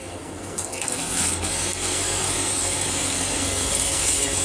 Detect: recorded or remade remade